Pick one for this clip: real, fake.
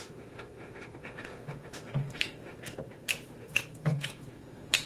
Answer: fake